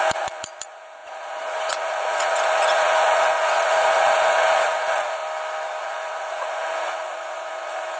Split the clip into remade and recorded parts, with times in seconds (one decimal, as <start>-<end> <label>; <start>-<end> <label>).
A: 0.0-5.2 remade; 5.2-5.8 recorded; 5.8-8.0 remade